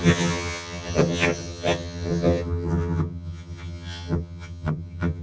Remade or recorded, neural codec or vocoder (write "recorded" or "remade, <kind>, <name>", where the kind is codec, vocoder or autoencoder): remade, vocoder, HiFi-GAN